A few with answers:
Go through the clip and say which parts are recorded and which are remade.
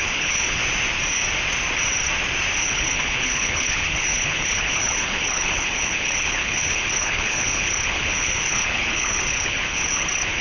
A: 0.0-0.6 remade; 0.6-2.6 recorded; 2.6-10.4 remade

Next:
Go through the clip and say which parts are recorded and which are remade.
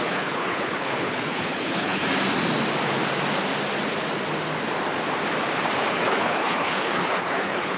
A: 0.0-2.0 remade; 2.0-5.9 recorded; 5.9-7.8 remade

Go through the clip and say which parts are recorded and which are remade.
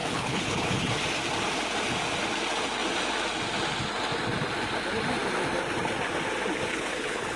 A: 0.0-0.9 remade; 0.9-6.7 recorded; 6.7-7.4 remade